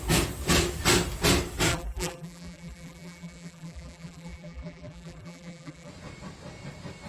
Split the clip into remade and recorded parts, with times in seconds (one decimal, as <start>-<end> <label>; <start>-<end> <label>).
0.0-1.7 recorded; 1.7-5.9 remade; 5.9-7.1 recorded

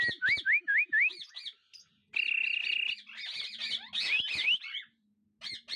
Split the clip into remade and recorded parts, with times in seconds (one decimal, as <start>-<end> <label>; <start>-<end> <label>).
0.0-5.8 recorded

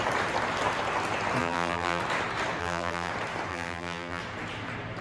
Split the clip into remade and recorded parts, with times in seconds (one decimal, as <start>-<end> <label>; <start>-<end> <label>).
0.0-1.4 recorded; 1.4-2.0 remade; 2.0-2.6 recorded; 2.6-3.1 remade; 3.1-3.5 recorded; 3.5-4.2 remade; 4.2-5.0 recorded

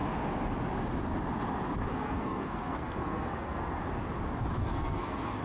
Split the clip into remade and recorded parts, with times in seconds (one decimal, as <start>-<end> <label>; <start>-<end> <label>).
0.0-1.9 recorded; 1.9-3.8 remade; 3.8-4.6 recorded; 4.6-5.4 remade

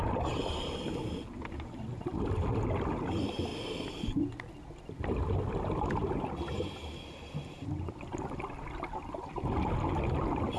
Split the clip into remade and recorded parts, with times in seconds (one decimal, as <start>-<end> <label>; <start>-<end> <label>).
0.0-10.6 recorded

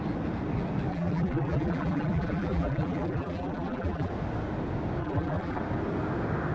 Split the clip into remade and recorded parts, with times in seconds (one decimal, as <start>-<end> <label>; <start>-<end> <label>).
0.0-0.9 recorded; 0.9-4.1 remade; 4.1-5.0 recorded; 5.0-5.6 remade; 5.6-6.5 recorded